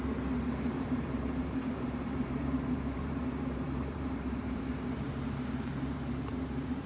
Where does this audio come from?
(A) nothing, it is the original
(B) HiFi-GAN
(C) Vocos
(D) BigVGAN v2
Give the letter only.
D